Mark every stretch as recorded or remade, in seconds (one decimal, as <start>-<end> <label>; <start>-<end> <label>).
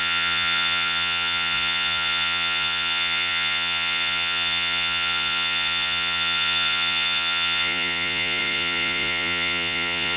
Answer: 0.0-10.2 remade